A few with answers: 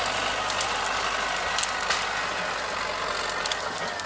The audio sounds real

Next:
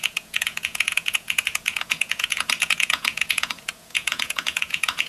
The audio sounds fake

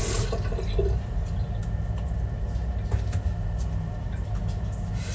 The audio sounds real